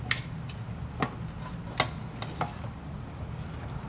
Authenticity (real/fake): real